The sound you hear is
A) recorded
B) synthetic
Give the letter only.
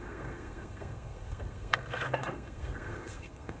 B